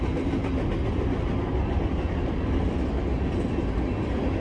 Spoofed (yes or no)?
no